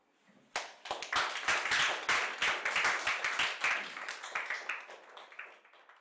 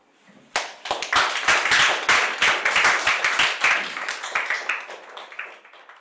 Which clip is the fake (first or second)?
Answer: second